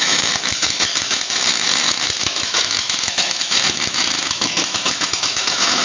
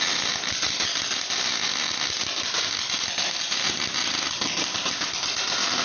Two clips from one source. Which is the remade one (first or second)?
first